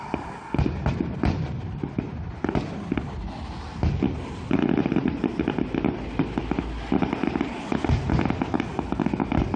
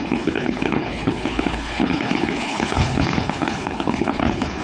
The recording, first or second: first